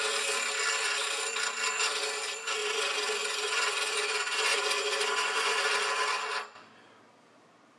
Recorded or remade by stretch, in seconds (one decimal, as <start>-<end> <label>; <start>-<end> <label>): 0.0-2.6 recorded; 2.6-5.6 remade; 5.6-7.8 recorded